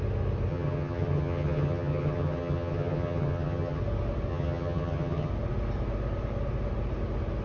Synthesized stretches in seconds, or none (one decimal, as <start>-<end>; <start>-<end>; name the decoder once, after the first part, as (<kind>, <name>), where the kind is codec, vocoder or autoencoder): 0.5-3.8 (vocoder, HiFi-GAN); 4.3-5.3